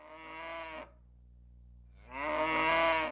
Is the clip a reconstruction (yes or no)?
no